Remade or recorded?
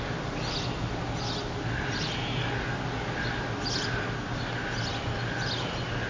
recorded